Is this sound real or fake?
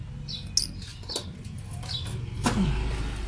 real